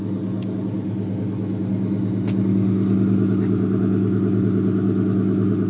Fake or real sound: real